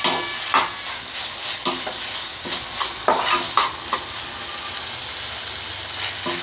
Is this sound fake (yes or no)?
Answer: no